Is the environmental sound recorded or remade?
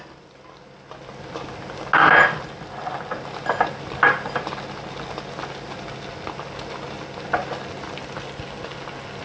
recorded